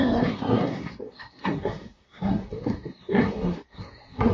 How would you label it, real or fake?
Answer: fake